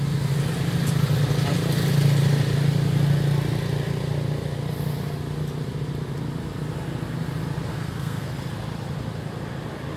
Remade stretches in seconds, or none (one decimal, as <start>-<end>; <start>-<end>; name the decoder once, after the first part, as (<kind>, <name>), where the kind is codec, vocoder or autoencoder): 7.7-8.3 (codec, SNAC)